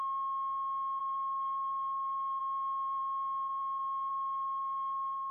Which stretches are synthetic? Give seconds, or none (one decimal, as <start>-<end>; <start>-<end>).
1.0-2.4; 4.1-5.3